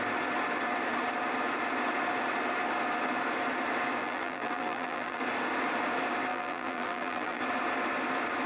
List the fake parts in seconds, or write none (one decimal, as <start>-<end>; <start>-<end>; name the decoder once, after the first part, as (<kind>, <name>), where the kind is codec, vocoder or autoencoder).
4.0-5.2 (vocoder, BigVGAN v2); 6.3-7.4